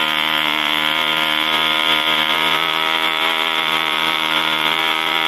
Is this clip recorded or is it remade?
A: remade